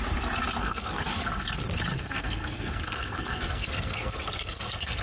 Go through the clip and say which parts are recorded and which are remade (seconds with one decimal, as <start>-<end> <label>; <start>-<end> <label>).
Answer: 0.0-0.6 recorded; 0.6-1.3 remade; 1.3-1.9 recorded; 1.9-5.0 remade